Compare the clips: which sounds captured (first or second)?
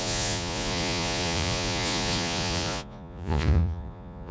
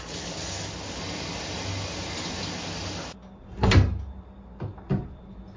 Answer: second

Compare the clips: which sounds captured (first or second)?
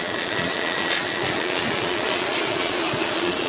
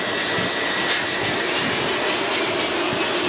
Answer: second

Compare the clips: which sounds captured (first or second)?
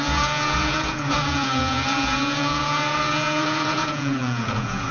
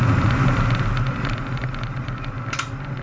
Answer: second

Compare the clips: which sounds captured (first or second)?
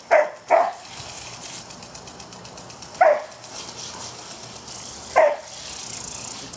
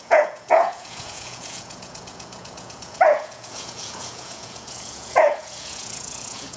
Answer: first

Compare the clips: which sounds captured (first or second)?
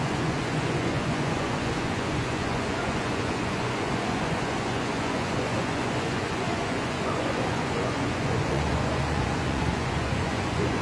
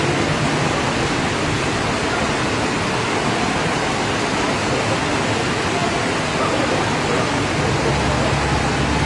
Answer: second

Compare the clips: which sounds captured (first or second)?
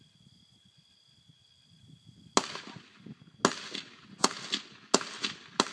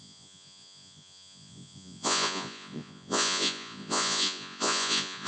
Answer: first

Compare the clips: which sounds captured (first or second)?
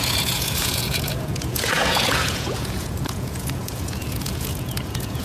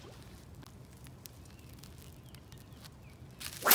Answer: second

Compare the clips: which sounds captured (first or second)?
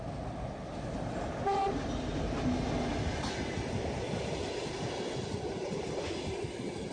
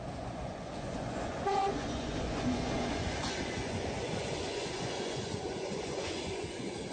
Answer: first